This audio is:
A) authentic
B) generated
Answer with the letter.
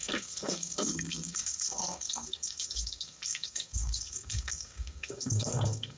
B